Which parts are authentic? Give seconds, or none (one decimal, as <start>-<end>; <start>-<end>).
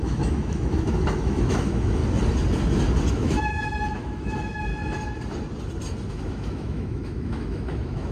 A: 2.0-3.1; 4.7-6.1